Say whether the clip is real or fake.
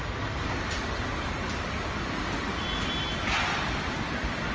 real